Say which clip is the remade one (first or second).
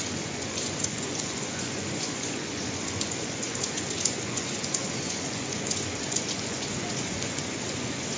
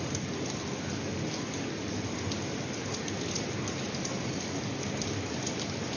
first